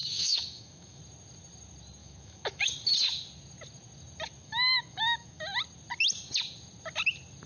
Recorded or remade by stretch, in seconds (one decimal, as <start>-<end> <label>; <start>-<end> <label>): 0.0-1.0 remade; 1.0-2.0 recorded; 2.0-2.7 remade; 2.7-4.4 recorded; 4.4-5.4 remade; 5.4-7.5 recorded